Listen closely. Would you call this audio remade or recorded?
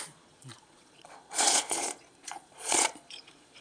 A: remade